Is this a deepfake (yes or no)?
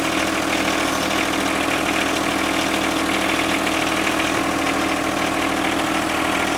no